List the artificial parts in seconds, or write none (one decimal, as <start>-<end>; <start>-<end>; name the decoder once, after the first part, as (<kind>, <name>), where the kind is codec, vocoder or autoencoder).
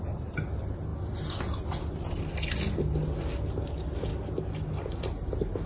none